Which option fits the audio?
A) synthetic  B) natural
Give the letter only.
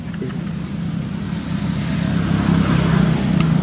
B